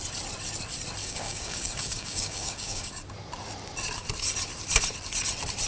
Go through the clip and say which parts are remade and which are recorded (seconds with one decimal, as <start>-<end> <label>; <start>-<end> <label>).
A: 0.0-1.0 recorded; 1.0-2.9 remade; 2.9-5.7 recorded

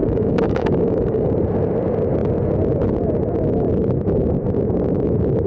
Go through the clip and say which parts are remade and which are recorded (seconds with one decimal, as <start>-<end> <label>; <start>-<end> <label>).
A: 0.0-1.3 remade; 1.3-5.5 recorded

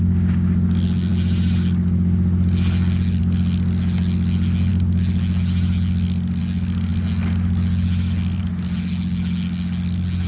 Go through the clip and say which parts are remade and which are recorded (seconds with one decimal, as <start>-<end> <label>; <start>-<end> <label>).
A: 0.0-10.3 recorded

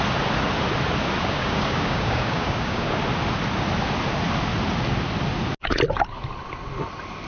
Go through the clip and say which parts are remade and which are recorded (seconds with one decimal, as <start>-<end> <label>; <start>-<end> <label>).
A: 0.0-1.2 recorded; 1.2-3.0 remade; 3.0-7.3 recorded

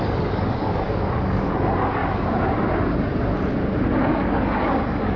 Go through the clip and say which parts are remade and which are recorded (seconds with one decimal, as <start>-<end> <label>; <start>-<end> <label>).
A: 0.0-2.0 remade; 2.0-4.0 recorded; 4.0-5.2 remade

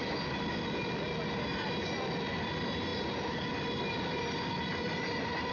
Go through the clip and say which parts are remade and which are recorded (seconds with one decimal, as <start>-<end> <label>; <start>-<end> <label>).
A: 0.0-5.5 recorded

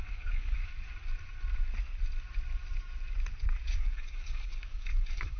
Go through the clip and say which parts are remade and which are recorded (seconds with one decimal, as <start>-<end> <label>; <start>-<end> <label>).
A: 0.0-0.6 remade; 0.6-3.8 recorded; 3.8-5.4 remade

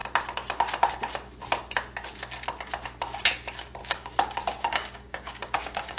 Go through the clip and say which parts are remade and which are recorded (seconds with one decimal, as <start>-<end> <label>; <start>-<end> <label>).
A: 0.0-3.8 recorded; 3.8-6.0 remade